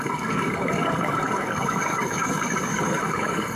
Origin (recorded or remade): remade